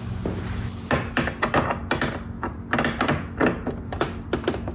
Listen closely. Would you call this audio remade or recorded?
recorded